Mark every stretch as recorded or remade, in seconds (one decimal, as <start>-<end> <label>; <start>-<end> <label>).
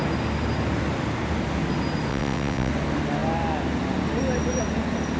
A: 0.0-2.1 recorded; 2.1-2.7 remade; 2.7-5.2 recorded